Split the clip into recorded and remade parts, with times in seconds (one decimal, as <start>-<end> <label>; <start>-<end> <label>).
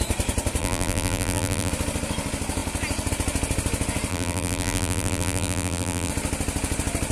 0.0-0.6 recorded; 0.6-1.7 remade; 1.7-4.1 recorded; 4.1-6.1 remade; 6.1-7.1 recorded